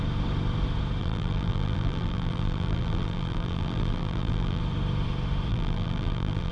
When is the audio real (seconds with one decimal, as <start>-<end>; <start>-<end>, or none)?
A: 0.0-1.0; 4.6-5.5